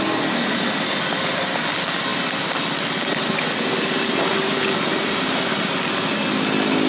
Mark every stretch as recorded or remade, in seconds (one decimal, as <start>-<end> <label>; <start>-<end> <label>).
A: 0.0-6.9 recorded